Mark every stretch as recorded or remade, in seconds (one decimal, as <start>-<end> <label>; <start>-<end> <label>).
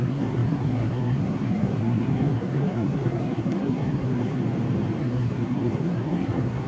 0.0-4.4 remade; 4.4-5.0 recorded; 5.0-6.7 remade